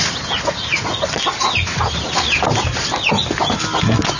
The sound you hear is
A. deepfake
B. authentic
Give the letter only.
B